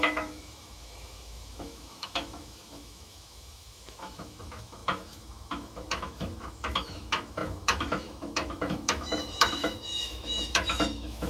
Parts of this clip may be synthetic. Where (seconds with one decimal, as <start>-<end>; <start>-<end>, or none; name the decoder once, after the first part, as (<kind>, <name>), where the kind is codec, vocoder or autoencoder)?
0.0-11.3 (autoencoder, DAC-VAE)